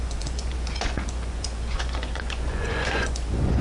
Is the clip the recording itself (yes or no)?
no